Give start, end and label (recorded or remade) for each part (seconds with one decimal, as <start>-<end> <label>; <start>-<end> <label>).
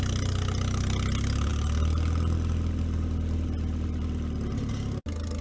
0.0-5.4 recorded